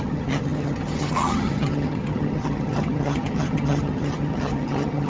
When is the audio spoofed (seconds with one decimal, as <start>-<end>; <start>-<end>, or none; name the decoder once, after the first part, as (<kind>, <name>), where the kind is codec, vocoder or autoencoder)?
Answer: 0.0-5.1 (vocoder, HiFi-GAN)